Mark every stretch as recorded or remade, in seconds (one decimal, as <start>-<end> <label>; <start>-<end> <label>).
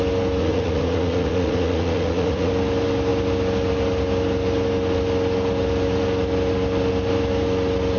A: 0.0-0.4 recorded; 0.4-2.5 remade; 2.5-8.0 recorded